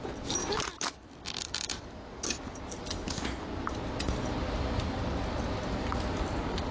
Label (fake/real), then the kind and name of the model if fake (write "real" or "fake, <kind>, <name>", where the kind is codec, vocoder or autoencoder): real